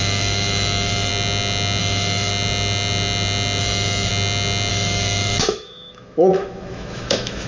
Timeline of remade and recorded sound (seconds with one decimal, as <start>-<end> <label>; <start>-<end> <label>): 0.0-1.1 remade; 1.1-1.8 recorded; 1.8-2.3 remade; 2.3-3.6 recorded; 3.6-4.1 remade; 4.1-4.7 recorded; 4.7-7.5 remade